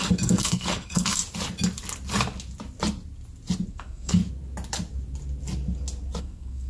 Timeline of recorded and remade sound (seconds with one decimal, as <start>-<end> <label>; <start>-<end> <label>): 0.0-1.2 remade; 1.2-3.7 recorded; 3.7-4.2 remade; 4.2-6.2 recorded; 6.2-6.7 remade